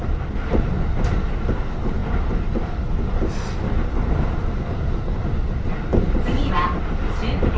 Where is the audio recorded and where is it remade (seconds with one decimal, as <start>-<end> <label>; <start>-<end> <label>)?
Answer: 0.0-5.9 recorded; 5.9-6.5 remade; 6.5-7.6 recorded